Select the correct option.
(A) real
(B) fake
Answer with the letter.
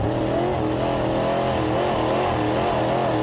A